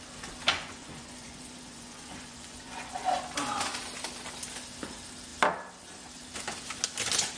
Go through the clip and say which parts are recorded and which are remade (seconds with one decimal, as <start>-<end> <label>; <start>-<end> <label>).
0.0-0.5 recorded; 0.5-2.9 remade; 2.9-7.4 recorded